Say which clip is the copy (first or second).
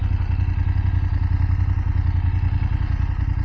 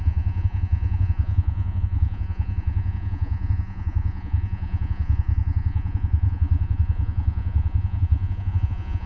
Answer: second